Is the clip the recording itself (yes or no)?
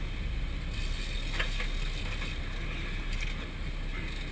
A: yes